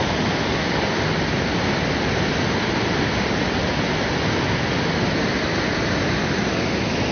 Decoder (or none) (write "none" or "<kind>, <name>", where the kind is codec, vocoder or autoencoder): none